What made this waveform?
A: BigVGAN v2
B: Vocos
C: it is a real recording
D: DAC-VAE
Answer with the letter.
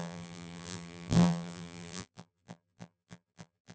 A